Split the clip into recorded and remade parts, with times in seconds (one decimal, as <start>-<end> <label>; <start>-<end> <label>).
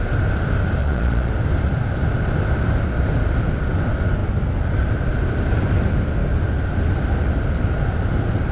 0.0-0.8 recorded; 0.8-1.3 remade; 1.3-8.5 recorded